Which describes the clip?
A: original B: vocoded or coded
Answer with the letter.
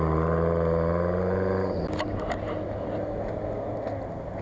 A